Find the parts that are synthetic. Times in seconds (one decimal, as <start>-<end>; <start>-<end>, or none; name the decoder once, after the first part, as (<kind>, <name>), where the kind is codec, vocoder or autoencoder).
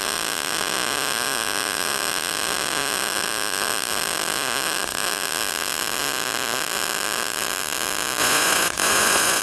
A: 8.2-9.4 (vocoder, Vocos)